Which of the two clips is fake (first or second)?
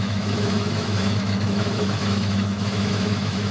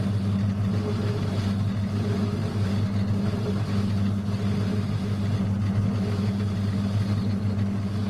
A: first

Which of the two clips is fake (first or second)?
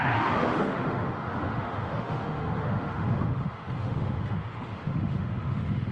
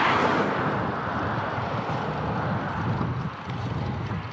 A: first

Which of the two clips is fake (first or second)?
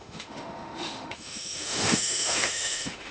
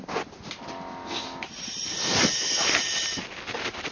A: first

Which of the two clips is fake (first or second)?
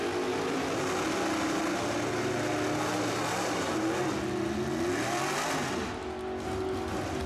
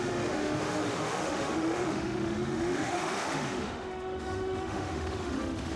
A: second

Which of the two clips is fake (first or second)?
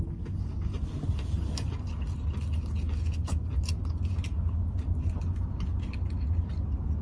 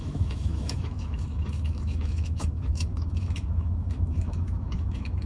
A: second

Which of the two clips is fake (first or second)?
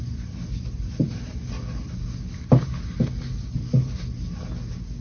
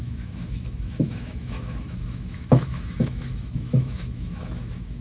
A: second